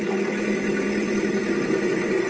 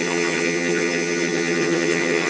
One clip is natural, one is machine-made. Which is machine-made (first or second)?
second